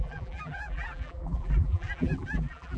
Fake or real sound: fake